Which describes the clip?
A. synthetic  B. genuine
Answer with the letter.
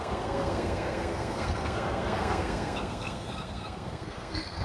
A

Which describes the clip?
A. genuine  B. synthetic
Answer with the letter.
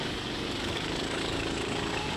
B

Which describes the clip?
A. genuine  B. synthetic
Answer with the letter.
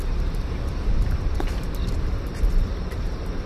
B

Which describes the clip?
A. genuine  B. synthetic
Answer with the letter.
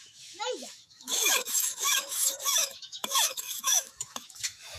B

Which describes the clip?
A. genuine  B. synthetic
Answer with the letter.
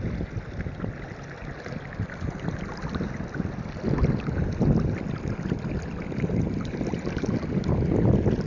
A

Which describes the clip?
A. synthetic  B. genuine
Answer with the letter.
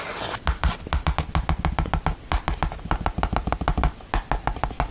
B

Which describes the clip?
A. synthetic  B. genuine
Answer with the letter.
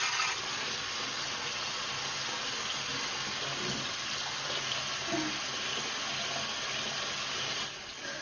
B